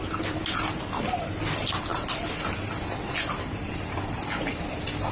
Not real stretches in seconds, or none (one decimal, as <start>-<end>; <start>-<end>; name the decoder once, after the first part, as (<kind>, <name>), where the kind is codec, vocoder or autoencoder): none